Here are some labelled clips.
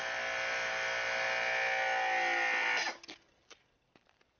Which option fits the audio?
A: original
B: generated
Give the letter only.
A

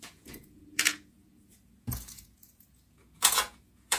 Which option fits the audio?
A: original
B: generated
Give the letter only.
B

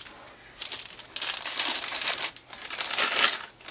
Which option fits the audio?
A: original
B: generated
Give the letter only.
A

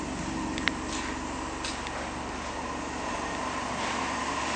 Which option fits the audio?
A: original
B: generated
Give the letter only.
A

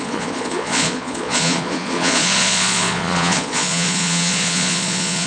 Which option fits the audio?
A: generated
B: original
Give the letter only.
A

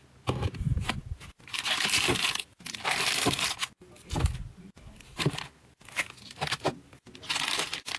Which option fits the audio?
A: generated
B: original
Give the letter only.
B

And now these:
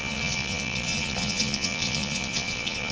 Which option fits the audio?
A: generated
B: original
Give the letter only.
A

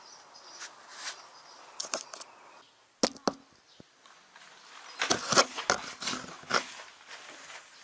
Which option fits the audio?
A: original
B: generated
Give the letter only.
A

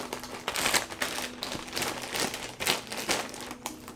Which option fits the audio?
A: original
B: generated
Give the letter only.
A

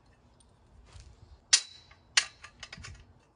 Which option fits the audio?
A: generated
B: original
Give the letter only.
B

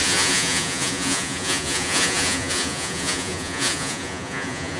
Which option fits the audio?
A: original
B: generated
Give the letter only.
B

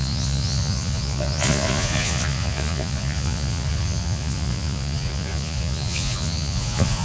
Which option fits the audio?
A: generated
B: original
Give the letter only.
A